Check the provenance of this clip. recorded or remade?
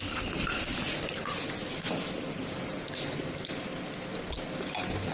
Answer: recorded